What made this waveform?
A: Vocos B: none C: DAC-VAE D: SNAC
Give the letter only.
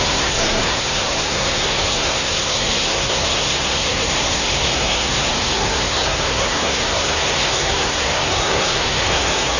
D